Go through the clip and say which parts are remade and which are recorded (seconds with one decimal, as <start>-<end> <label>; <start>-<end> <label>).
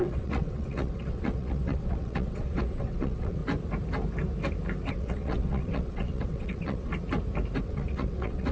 0.0-3.4 remade; 3.4-4.9 recorded; 4.9-6.9 remade; 6.9-7.6 recorded; 7.6-8.5 remade